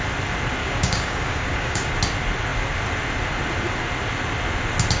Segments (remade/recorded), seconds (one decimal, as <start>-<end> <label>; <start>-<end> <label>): 0.0-0.6 recorded; 0.6-1.9 remade; 1.9-5.0 recorded

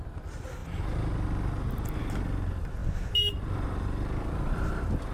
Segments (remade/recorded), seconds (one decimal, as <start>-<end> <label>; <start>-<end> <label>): 0.0-5.1 recorded

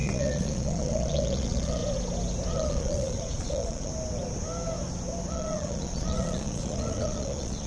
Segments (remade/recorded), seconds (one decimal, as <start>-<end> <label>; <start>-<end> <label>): 0.0-1.8 remade; 1.8-2.5 recorded; 2.5-3.9 remade; 3.9-5.3 recorded; 5.3-7.7 remade

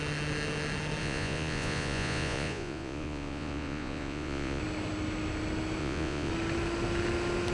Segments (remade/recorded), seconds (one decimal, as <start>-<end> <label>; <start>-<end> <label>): 0.0-1.0 recorded; 1.0-4.6 remade; 4.6-5.8 recorded; 5.8-6.3 remade; 6.3-7.5 recorded

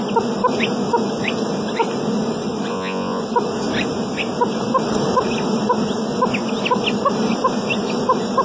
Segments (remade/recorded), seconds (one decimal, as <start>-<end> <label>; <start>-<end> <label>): 0.0-2.7 recorded; 2.7-3.2 remade; 3.2-8.4 recorded

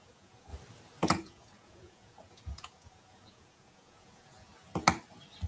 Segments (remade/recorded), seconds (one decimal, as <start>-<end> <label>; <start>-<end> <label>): 0.0-0.5 remade; 0.5-1.1 recorded; 1.1-4.5 remade; 4.5-5.5 recorded

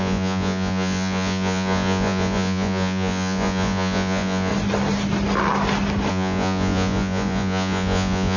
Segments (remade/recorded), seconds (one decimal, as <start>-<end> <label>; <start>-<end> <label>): 0.0-4.5 remade; 4.5-6.1 recorded; 6.1-8.4 remade

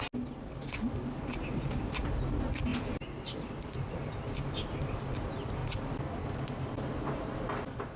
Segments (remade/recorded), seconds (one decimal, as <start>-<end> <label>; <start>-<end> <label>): 0.0-8.0 recorded